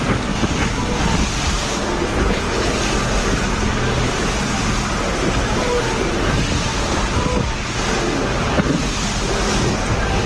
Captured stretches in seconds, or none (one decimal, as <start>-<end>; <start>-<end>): 0.0-2.1; 2.7-10.3

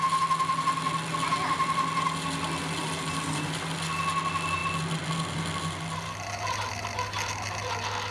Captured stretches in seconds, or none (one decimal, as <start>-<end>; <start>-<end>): 0.0-8.1